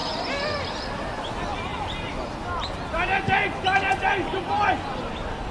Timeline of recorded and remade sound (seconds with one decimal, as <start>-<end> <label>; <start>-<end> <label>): 0.0-5.5 recorded

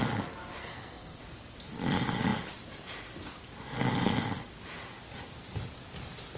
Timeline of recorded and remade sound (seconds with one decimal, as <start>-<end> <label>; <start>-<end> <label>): 0.0-0.6 recorded; 0.6-1.2 remade; 1.2-6.4 recorded

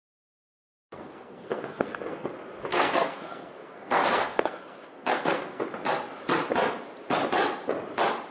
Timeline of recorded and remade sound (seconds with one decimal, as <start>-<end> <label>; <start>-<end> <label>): 0.0-2.3 remade; 2.3-2.7 recorded; 2.7-5.6 remade; 5.6-8.3 recorded

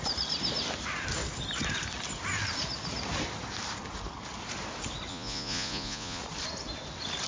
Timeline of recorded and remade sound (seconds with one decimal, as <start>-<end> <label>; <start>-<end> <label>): 0.0-5.1 recorded; 5.1-6.2 remade; 6.2-7.3 recorded

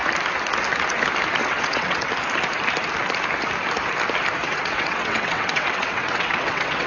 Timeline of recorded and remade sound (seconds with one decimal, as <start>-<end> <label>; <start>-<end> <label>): 0.0-1.4 recorded; 1.4-2.1 remade; 2.1-4.4 recorded; 4.4-6.9 remade

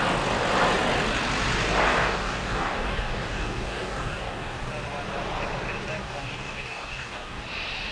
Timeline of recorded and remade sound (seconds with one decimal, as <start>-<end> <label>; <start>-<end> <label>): 0.0-1.9 recorded; 1.9-4.7 remade; 4.7-6.0 recorded; 6.0-7.4 remade; 7.4-7.9 recorded